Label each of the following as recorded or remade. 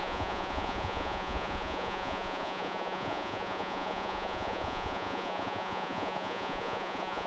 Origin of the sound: remade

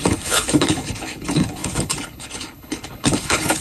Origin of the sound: remade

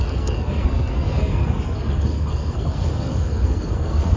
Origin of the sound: remade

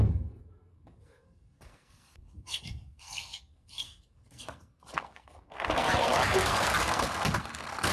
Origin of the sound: remade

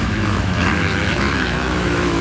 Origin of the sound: remade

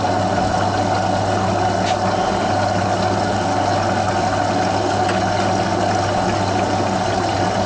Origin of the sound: recorded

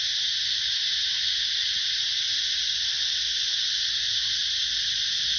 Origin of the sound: recorded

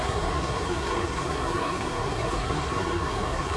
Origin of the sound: remade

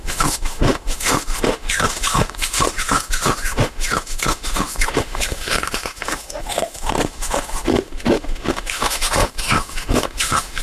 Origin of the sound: remade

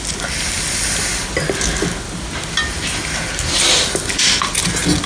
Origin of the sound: recorded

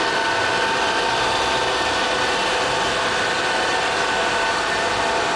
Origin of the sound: recorded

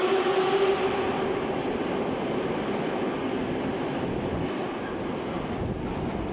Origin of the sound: recorded